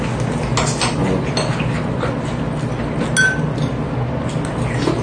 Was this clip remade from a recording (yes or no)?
no